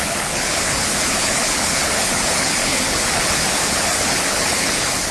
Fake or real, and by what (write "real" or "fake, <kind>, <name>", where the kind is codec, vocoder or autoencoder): fake, codec, HILCodec